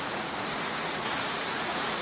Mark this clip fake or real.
fake